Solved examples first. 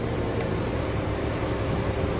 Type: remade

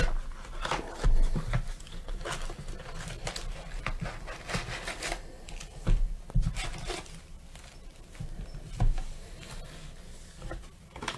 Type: recorded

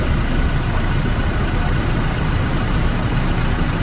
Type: recorded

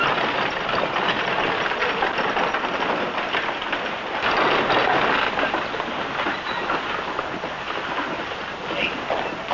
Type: recorded